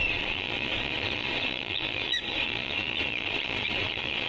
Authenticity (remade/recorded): remade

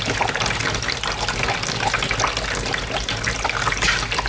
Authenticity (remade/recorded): recorded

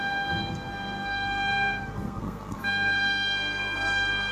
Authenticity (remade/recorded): remade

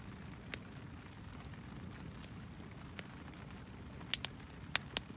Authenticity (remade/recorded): recorded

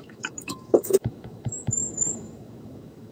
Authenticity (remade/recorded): remade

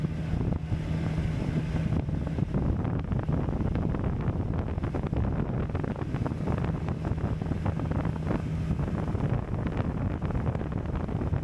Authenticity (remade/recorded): recorded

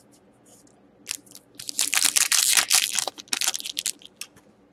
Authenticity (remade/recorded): recorded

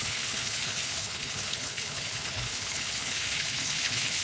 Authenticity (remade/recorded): remade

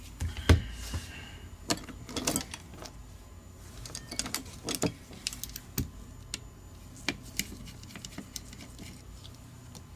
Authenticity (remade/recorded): recorded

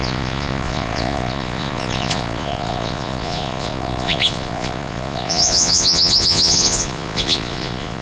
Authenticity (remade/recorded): remade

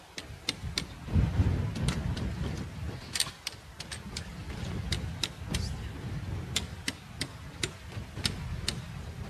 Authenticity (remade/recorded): recorded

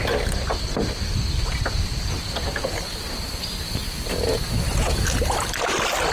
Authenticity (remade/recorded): recorded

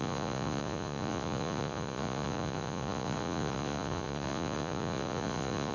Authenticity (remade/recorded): remade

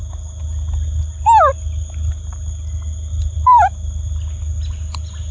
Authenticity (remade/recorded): recorded